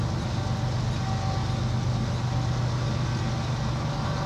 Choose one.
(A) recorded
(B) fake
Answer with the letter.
A